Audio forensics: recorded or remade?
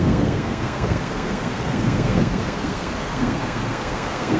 remade